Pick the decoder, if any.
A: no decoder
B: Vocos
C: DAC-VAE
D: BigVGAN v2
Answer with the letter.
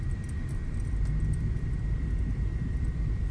D